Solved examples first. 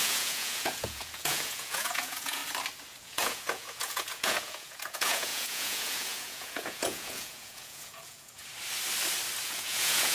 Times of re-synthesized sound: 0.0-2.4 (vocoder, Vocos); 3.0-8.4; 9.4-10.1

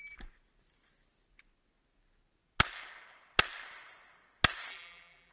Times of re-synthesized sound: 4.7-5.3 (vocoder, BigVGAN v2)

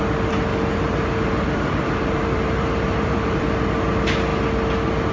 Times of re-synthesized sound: 0.5-3.4 (vocoder, BigVGAN v2)

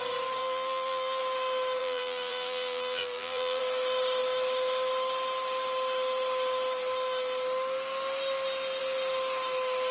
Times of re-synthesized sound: 0.4-1.2 (vocoder, BigVGAN v2); 1.8-3.6

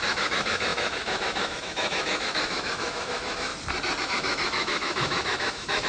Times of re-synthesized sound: 0.0-3.5 (autoencoder, DAC-VAE); 4.0-5.9

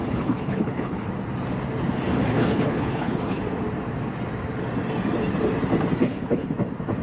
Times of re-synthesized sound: 0.0-1.1 (codec, HILCodec); 2.3-3.4; 6.0-6.5